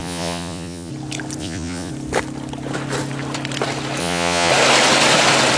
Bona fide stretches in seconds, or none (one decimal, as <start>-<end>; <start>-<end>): 0.9-1.4; 1.9-4.0; 4.5-5.6